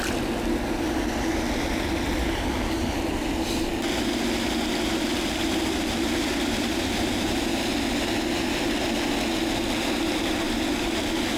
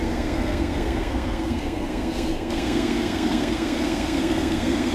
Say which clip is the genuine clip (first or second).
first